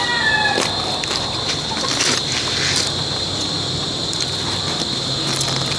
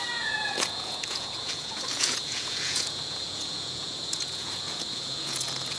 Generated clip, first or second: second